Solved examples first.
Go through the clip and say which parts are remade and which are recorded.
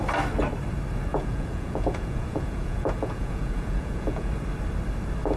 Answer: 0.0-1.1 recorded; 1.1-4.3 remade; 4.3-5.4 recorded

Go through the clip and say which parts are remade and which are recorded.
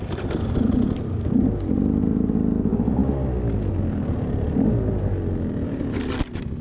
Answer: 0.0-6.6 recorded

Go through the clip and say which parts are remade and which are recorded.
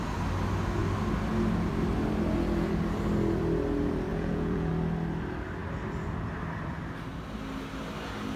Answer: 0.0-4.1 recorded; 4.1-4.7 remade; 4.7-8.4 recorded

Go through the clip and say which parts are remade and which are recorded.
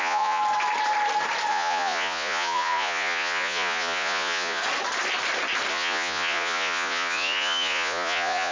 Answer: 0.0-0.4 remade; 0.4-1.5 recorded; 1.5-4.6 remade; 4.6-5.7 recorded; 5.7-8.5 remade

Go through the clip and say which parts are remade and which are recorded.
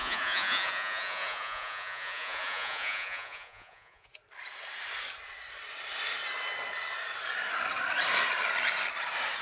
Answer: 0.0-4.2 remade; 4.2-9.4 recorded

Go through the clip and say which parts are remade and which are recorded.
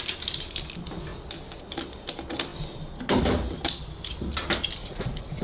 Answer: 0.0-4.8 recorded; 4.8-5.4 remade